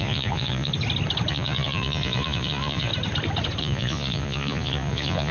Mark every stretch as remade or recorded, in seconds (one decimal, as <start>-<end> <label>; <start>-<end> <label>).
0.0-0.7 remade; 0.7-1.3 recorded; 1.3-2.9 remade; 2.9-3.6 recorded; 3.6-5.3 remade